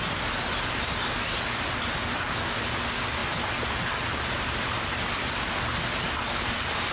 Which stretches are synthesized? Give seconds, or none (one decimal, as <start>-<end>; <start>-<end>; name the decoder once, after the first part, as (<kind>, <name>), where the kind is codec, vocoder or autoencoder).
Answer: none